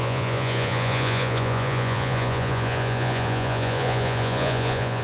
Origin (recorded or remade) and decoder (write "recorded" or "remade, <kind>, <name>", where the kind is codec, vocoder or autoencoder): remade, vocoder, Vocos